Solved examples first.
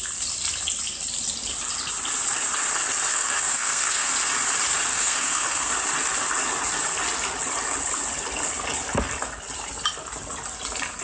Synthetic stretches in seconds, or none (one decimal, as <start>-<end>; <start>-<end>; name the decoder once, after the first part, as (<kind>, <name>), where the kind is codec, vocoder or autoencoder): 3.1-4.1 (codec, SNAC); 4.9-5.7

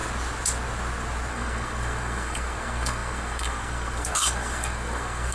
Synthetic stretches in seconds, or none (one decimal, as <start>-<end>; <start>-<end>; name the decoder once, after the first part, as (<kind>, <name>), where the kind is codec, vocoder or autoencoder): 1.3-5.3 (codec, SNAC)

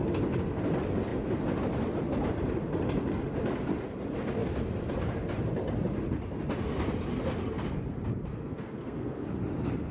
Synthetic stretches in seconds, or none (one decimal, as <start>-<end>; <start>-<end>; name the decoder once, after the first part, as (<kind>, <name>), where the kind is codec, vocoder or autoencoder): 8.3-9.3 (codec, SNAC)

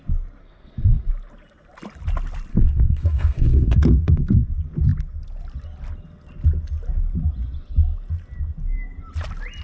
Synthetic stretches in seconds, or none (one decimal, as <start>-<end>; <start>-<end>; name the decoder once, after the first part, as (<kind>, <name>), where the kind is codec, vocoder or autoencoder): 0.4-1.1 (codec, SNAC); 2.5-4.5

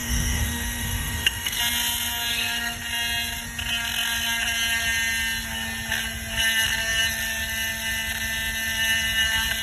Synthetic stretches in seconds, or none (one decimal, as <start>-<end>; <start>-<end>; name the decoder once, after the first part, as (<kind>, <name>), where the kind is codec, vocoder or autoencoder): 0.0-1.6 (codec, SNAC); 2.3-2.8

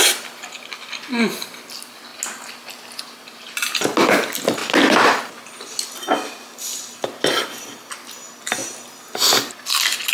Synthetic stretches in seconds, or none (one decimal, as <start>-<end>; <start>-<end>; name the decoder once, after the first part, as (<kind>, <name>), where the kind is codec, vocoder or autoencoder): none